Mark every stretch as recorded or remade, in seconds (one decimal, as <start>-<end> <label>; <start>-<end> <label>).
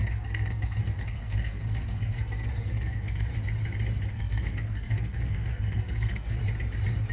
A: 0.0-3.3 remade; 3.3-4.1 recorded; 4.1-6.4 remade; 6.4-7.1 recorded